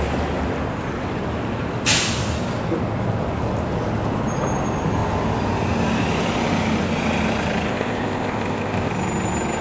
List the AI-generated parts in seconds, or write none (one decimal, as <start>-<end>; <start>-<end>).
7.7-8.9